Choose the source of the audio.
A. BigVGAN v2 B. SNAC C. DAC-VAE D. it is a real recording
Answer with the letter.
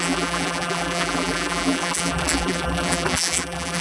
A